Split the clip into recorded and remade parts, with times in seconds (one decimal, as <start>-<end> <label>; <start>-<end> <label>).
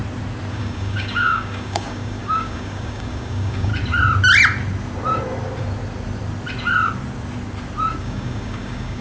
0.0-0.5 recorded; 0.5-3.7 remade; 3.7-8.0 recorded; 8.0-9.0 remade